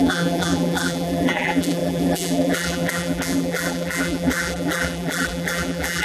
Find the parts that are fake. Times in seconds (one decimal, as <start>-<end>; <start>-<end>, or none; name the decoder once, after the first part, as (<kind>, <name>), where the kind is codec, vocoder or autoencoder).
0.0-6.0 (vocoder, BigVGAN v2)